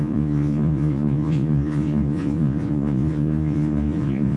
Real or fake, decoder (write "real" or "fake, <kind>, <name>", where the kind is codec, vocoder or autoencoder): fake, vocoder, Vocos